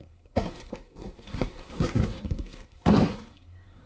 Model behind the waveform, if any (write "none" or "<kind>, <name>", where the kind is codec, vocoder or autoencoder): codec, SNAC